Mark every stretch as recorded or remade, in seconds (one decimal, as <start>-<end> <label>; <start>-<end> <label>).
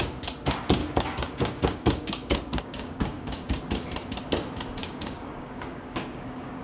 0.0-0.8 recorded; 0.8-3.6 remade; 3.6-4.8 recorded; 4.8-6.6 remade